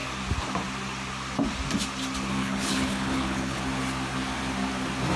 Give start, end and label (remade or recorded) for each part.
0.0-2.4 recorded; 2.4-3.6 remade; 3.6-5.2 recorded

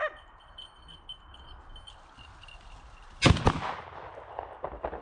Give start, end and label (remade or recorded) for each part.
0.0-5.0 recorded

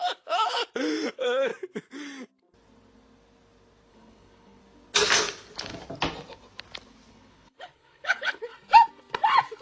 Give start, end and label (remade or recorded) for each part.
0.0-0.6 remade; 0.6-1.1 recorded; 1.1-1.5 remade; 1.5-3.9 recorded; 3.9-4.6 remade; 4.6-7.1 recorded; 7.1-8.5 remade; 8.5-9.6 recorded

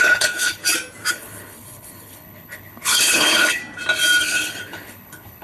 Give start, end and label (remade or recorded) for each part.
0.0-0.6 remade; 0.6-1.1 recorded; 1.1-3.6 remade; 3.6-4.2 recorded; 4.2-5.4 remade

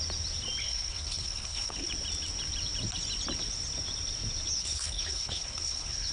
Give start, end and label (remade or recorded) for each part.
0.0-0.6 recorded; 0.6-1.9 remade; 1.9-4.6 recorded; 4.6-6.1 remade

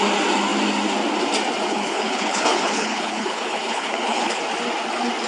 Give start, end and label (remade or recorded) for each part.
0.0-1.7 recorded; 1.7-4.4 remade; 4.4-5.3 recorded

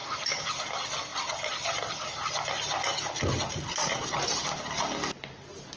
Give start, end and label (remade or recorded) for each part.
0.0-5.8 recorded